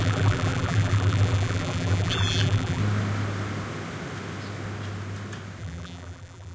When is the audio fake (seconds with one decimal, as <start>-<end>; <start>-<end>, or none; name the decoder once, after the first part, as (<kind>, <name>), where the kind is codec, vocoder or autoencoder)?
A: 0.0-2.8 (vocoder, BigVGAN v2); 5.6-6.5

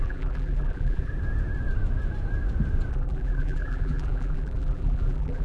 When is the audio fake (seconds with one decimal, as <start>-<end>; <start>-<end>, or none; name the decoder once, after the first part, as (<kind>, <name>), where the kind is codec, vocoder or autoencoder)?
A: 0.0-1.1 (vocoder, BigVGAN v2); 2.9-5.4

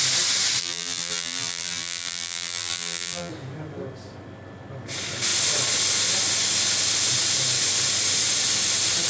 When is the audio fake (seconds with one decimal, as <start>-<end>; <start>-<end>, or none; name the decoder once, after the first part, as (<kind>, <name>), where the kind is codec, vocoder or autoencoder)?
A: 0.6-3.3 (vocoder, BigVGAN v2)

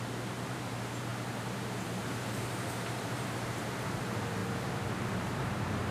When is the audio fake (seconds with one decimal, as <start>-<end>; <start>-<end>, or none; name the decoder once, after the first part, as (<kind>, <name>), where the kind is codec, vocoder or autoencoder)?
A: 0.0-4.4 (vocoder, BigVGAN v2); 5.1-5.9